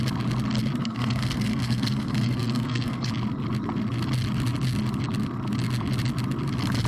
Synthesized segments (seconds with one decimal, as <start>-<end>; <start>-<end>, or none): 0.8-3.1